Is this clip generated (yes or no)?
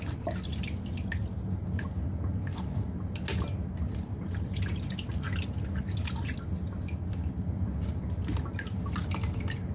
no